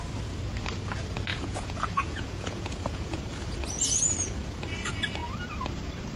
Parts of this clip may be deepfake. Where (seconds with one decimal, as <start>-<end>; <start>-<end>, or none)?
1.3-3.2